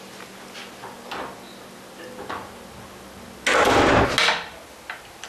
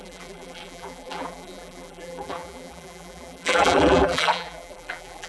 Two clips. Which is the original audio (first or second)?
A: first